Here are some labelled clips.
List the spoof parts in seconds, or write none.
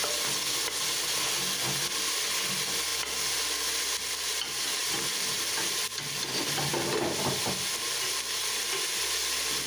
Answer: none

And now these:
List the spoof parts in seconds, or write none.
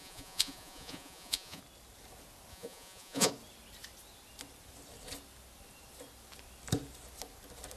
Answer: 0.0-1.6 (vocoder, Vocos); 2.5-3.3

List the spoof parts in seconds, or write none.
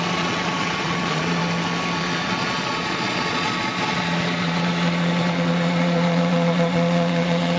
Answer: 0.0-1.4 (vocoder, Vocos); 2.0-7.6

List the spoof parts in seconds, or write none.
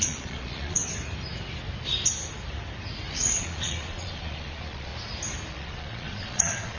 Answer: 0.0-0.8 (vocoder, Vocos); 3.1-4.9; 5.5-6.8